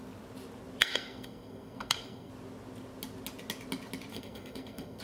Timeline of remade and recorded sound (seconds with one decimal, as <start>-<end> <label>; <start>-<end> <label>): 0.0-0.8 recorded; 0.8-2.3 remade; 2.3-4.1 recorded; 4.1-5.0 remade